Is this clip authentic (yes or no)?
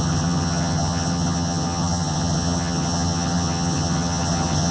no